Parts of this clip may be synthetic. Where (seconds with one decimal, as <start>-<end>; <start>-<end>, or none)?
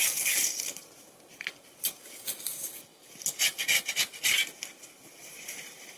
none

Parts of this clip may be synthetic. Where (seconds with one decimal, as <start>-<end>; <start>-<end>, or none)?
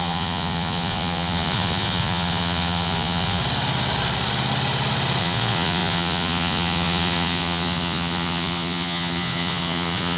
0.0-3.4; 5.2-10.2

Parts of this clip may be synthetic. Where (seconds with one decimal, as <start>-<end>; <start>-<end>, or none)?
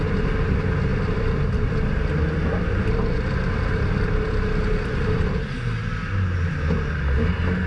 0.9-5.5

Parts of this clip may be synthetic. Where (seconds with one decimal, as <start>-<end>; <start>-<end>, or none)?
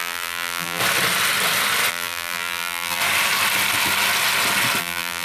0.0-0.8; 1.9-3.0; 4.8-5.2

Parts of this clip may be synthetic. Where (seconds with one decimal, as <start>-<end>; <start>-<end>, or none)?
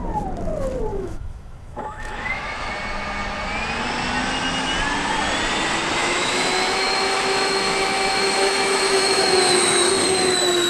0.9-2.7; 6.0-9.9